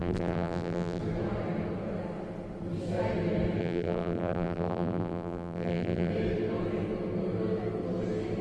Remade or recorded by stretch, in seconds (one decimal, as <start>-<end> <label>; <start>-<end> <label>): 0.0-1.0 remade; 1.0-3.6 recorded; 3.6-6.1 remade; 6.1-8.4 recorded